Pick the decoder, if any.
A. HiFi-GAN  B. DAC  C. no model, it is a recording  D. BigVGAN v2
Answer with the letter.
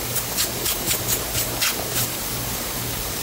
B